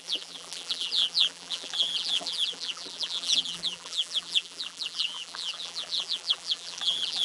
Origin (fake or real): fake